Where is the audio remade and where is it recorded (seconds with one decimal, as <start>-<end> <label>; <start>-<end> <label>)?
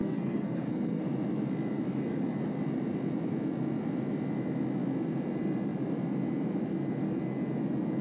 0.0-1.0 remade; 1.0-8.0 recorded